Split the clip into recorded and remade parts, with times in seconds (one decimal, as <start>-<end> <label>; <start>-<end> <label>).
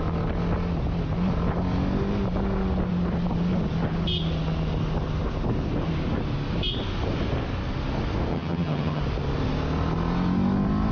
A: 0.0-8.3 recorded; 8.3-9.0 remade; 9.0-10.9 recorded